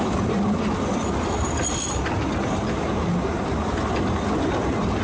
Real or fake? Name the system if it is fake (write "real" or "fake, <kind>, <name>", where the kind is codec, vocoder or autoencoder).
real